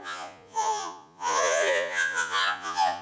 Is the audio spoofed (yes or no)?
yes